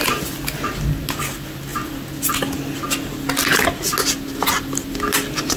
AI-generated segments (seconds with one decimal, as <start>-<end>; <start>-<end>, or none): none